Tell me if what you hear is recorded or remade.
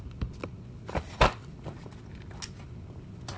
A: recorded